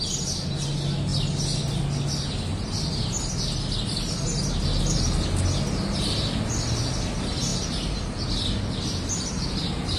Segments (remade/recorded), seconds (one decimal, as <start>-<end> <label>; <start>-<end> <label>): 0.0-10.0 recorded